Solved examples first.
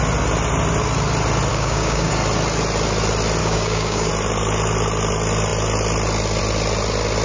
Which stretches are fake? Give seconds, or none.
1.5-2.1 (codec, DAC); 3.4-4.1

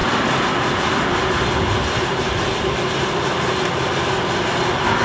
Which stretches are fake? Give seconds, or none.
none

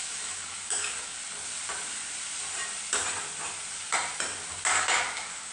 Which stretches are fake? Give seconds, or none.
0.0-1.2 (codec, DAC); 4.5-5.5

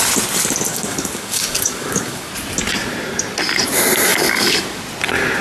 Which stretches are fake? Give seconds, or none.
0.7-2.3 (codec, DAC); 4.1-4.8

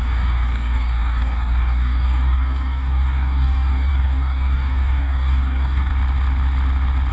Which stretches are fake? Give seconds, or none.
0.0-5.9 (codec, DAC)

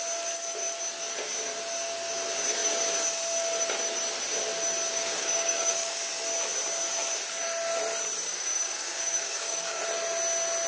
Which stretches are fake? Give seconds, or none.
4.9-6.0 (codec, DAC); 8.3-9.8

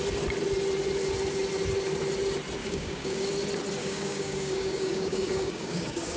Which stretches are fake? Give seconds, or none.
2.6-3.3 (codec, DAC); 3.8-6.2

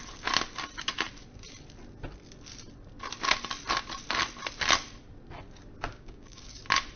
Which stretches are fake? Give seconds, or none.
5.9-6.6 (codec, DAC)